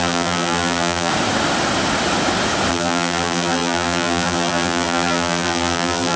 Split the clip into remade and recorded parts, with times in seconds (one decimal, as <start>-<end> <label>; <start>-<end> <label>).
0.0-1.1 remade; 1.1-2.7 recorded; 2.7-6.2 remade